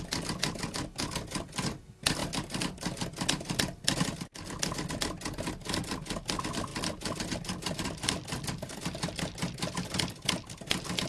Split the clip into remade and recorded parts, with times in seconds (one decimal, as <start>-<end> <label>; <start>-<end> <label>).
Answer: 0.0-11.1 recorded